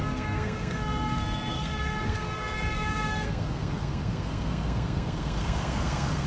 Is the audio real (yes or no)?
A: no